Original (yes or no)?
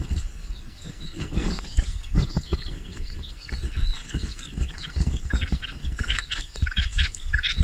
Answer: no